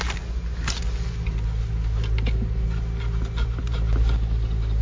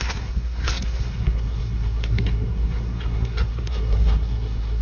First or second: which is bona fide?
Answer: first